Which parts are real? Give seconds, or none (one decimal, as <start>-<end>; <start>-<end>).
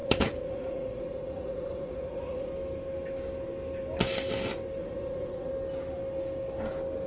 2.5-4.8; 5.5-7.1